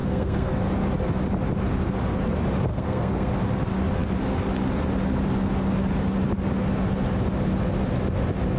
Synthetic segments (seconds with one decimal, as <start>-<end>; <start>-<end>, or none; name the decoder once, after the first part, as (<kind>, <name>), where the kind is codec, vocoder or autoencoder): 0.0-0.5 (codec, SNAC); 2.7-3.3